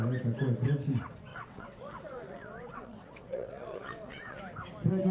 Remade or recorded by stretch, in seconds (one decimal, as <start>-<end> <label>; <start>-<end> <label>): 0.0-1.3 recorded; 1.3-4.4 remade; 4.4-5.1 recorded